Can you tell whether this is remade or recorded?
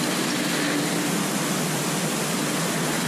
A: recorded